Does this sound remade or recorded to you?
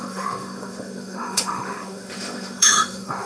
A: remade